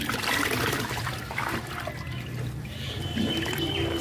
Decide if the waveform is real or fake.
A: real